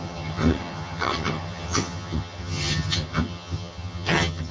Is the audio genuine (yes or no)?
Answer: no